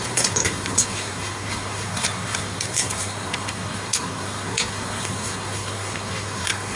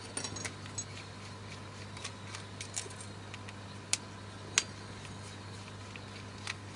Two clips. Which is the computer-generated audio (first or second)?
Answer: first